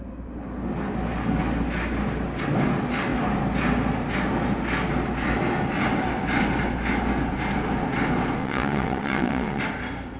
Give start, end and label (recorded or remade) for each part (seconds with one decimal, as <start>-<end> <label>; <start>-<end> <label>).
0.0-8.4 recorded; 8.4-9.6 remade; 9.6-10.2 recorded